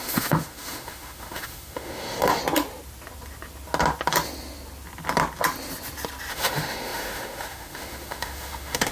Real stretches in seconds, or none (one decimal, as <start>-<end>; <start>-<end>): 2.4-6.3